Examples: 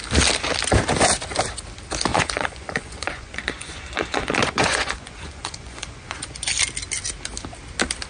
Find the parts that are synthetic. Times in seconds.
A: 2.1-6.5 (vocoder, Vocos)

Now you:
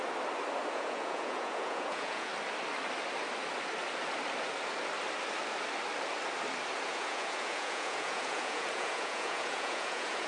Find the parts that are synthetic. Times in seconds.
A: 0.7-2.3 (vocoder, Vocos); 6.9-10.3

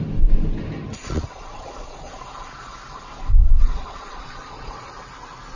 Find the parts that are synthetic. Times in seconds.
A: 1.0-2.1 (vocoder, Vocos); 3.4-4.9

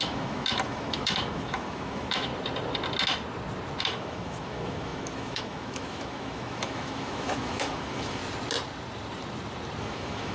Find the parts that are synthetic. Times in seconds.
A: 0.0-2.3 (autoencoder, DAC-VAE); 3.8-8.2; 9.8-10.3

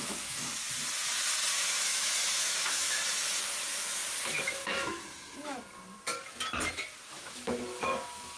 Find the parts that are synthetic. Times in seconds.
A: 0.0-0.5 (autoencoder, DAC-VAE); 1.6-3.0; 4.2-5.6; 7.1-8.4

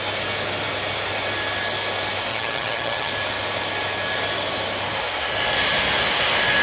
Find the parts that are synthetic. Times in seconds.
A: 2.3-3.1 (vocoder, HiFi-GAN)